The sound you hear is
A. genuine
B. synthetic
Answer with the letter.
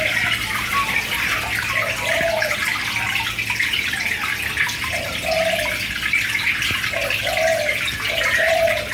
A